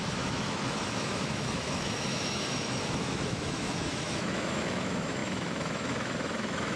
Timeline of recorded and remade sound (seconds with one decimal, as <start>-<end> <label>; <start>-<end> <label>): 0.0-6.8 remade